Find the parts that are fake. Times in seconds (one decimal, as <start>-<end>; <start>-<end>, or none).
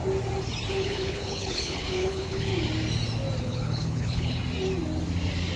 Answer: 0.7-2.5; 3.4-4.4